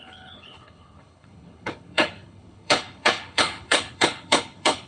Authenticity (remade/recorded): remade